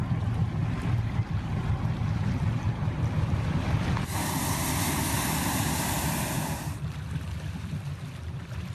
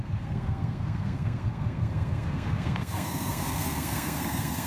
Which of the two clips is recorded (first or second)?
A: first